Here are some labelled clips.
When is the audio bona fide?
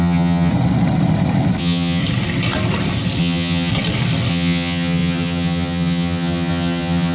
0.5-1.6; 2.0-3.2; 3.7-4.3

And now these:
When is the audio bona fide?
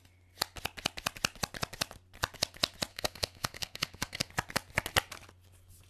0.0-2.9; 4.3-5.9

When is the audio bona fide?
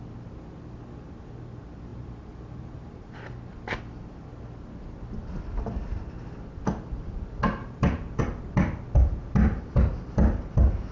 0.0-1.9; 3.8-7.6; 8.2-10.9